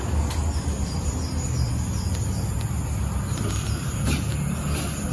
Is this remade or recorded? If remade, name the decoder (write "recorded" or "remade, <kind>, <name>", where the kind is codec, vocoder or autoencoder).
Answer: recorded